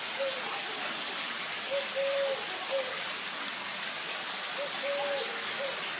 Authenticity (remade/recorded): recorded